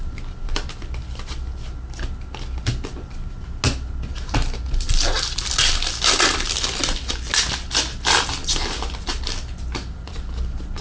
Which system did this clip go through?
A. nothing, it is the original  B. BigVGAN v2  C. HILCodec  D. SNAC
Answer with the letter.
A